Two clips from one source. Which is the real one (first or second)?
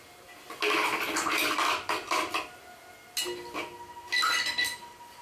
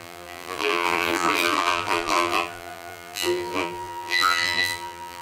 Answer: first